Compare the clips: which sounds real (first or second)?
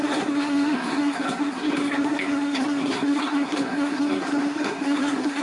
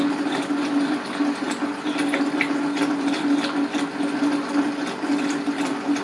second